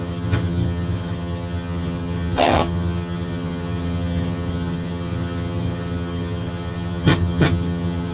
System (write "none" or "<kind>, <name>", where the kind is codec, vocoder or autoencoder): vocoder, HiFi-GAN